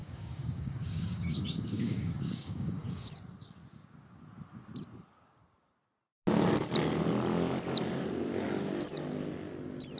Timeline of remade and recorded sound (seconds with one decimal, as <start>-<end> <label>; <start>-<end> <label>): 0.0-3.1 remade; 3.1-10.0 recorded